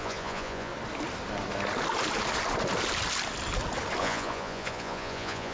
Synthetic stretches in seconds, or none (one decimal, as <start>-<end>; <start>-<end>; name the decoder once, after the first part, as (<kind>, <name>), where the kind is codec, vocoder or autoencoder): 0.0-0.7 (vocoder, Vocos); 4.0-5.5